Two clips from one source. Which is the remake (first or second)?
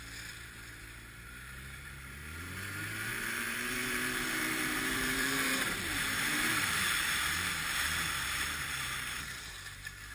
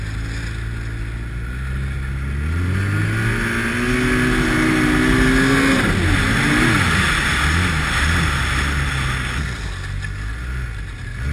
first